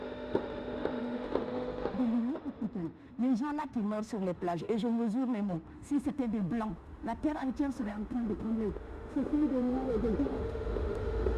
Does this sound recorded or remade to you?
remade